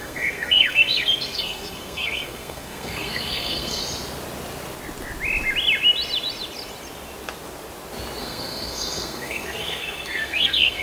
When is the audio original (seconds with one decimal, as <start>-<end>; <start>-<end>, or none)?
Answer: 3.8-8.2

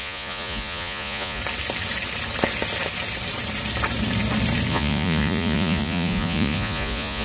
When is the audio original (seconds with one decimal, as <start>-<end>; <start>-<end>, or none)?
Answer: 1.4-4.7

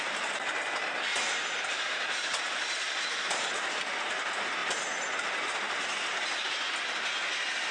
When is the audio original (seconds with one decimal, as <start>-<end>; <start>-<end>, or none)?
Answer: 0.0-1.1; 3.7-7.7

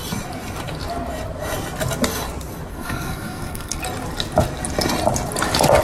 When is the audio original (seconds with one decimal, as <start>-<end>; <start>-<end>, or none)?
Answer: 0.0-2.7; 3.8-5.8

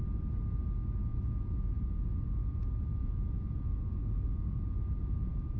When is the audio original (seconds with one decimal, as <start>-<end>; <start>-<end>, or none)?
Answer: 0.0-1.1; 2.5-3.0; 4.5-5.0

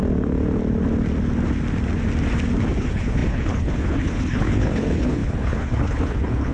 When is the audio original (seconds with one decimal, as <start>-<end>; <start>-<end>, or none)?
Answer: 0.0-2.8

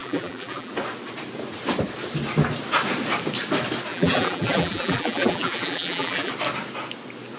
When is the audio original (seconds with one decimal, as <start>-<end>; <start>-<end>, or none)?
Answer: 0.7-3.9; 6.3-7.4

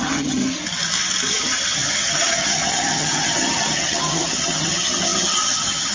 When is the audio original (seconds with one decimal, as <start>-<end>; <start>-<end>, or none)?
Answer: 0.4-1.3